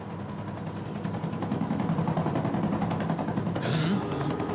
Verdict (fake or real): real